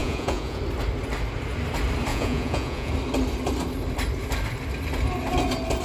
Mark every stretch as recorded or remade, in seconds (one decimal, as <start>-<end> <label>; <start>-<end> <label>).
0.0-0.6 remade; 0.6-2.1 recorded; 2.1-2.9 remade; 2.9-5.8 recorded